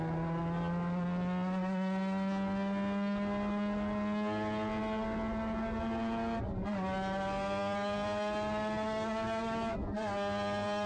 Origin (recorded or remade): recorded